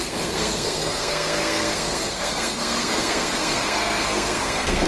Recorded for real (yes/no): no